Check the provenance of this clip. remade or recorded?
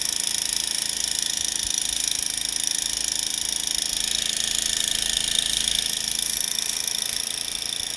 recorded